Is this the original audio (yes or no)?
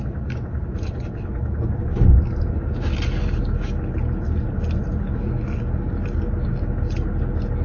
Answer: yes